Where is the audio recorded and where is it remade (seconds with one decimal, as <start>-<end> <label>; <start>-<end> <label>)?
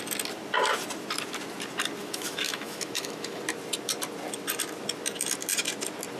0.0-2.0 recorded; 2.0-3.4 remade; 3.4-6.2 recorded